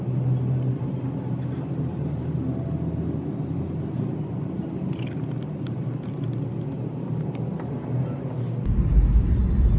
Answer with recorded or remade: recorded